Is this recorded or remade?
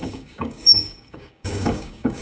remade